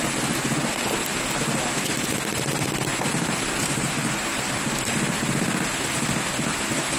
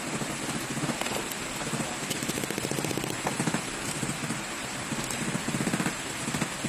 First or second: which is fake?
second